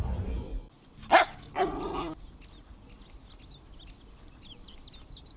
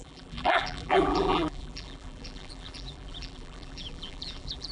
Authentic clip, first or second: first